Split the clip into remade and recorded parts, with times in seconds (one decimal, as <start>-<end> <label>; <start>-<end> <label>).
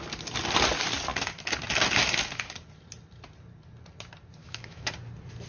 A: 0.0-4.4 recorded; 4.4-4.9 remade; 4.9-5.5 recorded